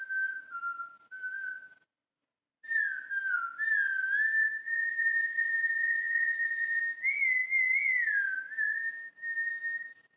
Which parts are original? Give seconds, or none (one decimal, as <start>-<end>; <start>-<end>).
0.0-4.4; 6.8-10.2